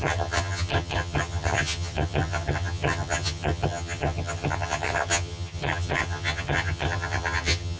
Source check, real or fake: fake